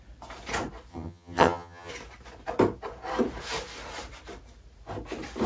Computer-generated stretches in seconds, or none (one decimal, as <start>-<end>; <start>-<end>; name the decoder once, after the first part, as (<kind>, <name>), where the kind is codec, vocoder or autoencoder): 0.9-1.9 (vocoder, HiFi-GAN)